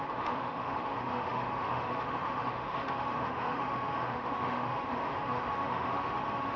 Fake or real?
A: fake